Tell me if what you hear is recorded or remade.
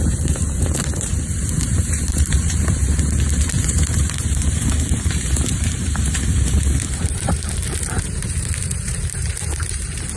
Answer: remade